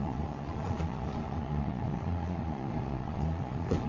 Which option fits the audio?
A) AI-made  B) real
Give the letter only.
A